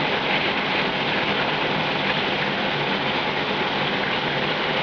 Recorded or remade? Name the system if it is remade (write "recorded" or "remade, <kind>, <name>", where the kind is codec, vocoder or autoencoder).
recorded